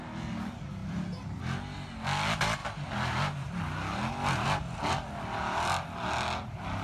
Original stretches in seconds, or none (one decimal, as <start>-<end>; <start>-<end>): 0.0-0.8; 1.4-6.8